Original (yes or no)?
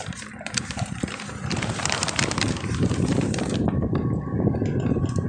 no